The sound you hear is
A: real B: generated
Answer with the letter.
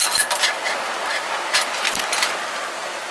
A